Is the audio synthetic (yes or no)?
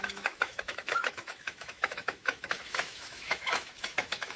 yes